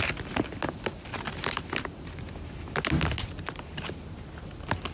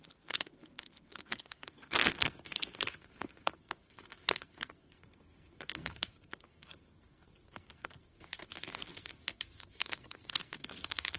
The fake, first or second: second